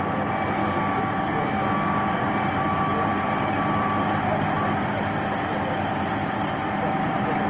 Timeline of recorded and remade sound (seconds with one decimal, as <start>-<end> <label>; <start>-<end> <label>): 0.0-0.6 recorded; 0.6-2.3 remade; 2.3-7.5 recorded